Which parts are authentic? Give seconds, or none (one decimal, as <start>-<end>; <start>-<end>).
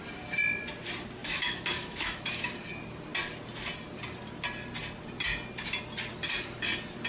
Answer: 0.0-1.2; 2.5-7.1